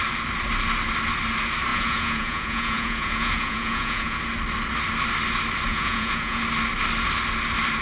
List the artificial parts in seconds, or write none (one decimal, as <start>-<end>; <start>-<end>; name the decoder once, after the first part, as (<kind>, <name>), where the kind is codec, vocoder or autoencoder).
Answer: 1.7-4.2 (vocoder, Vocos); 5.7-6.4